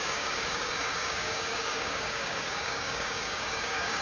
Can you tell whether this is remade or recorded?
remade